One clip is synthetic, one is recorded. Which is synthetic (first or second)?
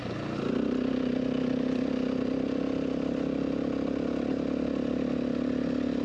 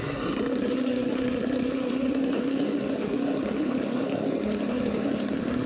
second